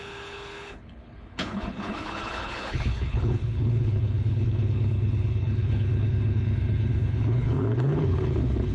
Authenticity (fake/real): fake